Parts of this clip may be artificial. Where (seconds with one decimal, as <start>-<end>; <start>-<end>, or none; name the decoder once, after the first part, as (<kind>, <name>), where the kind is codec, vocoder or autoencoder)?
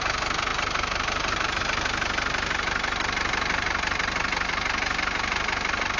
0.5-1.6 (vocoder, BigVGAN v2)